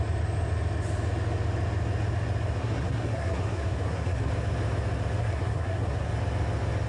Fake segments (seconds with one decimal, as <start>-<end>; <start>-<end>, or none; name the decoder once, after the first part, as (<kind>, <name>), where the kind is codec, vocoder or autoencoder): 2.6-4.3 (codec, SNAC); 5.2-6.1